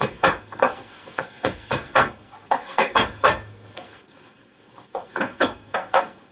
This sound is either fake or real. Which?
fake